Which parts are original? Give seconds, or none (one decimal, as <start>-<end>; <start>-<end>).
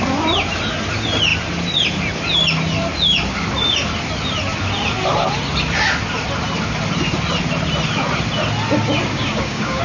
0.0-9.1